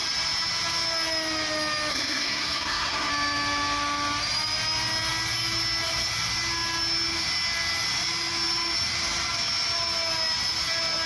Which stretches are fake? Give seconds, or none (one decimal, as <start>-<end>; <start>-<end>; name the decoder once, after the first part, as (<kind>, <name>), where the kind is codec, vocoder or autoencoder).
1.9-3.1 (codec, SNAC)